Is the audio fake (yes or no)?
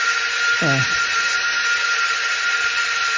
no